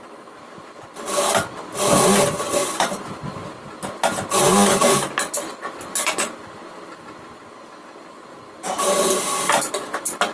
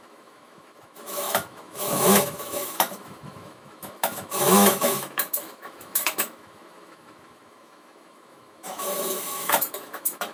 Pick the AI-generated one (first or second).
second